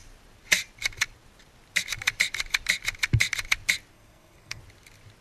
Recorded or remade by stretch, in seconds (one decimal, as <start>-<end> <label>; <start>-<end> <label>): 0.0-3.9 recorded; 3.9-4.6 remade; 4.6-5.2 recorded